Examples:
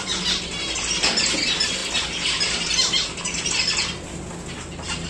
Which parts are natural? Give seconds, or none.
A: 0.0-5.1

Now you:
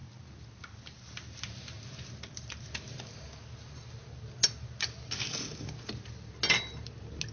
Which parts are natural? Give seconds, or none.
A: 0.0-7.3

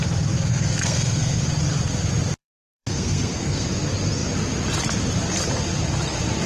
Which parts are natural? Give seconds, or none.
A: 0.0-0.5; 1.4-2.4; 3.7-6.5

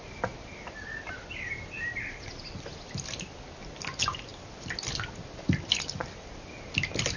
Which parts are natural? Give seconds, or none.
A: 0.0-7.2

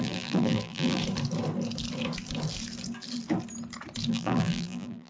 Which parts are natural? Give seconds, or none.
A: 1.0-4.1

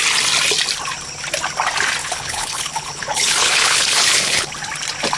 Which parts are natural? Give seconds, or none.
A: 0.0-2.0; 4.5-5.2

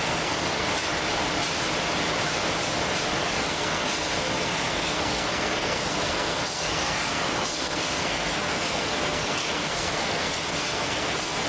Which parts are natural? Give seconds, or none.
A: 0.7-3.2

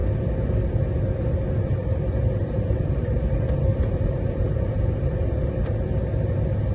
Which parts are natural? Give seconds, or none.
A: 0.0-1.8; 5.5-6.7